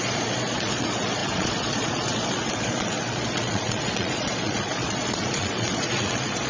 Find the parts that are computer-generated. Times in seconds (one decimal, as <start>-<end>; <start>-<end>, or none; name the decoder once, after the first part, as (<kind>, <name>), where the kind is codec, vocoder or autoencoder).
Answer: 0.0-6.5 (vocoder, Vocos)